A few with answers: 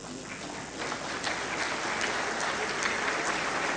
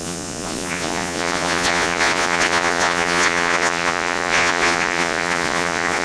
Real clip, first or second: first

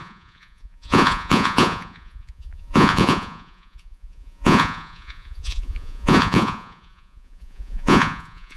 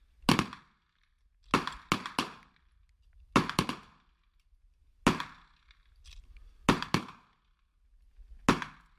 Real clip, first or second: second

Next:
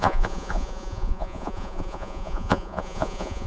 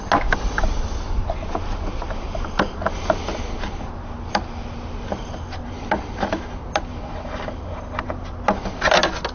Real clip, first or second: second